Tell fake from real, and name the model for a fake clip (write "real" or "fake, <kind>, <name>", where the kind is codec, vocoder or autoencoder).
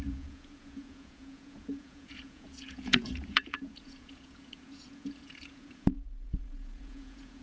fake, vocoder, Vocos